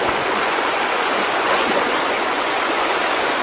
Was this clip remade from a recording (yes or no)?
yes